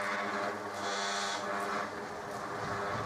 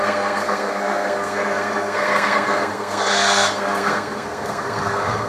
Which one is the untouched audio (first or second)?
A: first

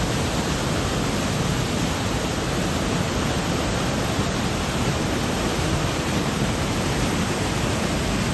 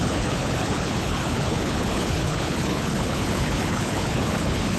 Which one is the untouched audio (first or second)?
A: first